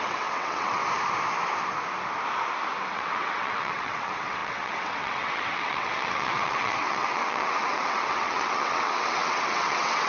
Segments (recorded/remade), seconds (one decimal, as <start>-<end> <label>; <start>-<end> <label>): 0.0-0.8 remade; 0.8-2.7 recorded; 2.7-10.1 remade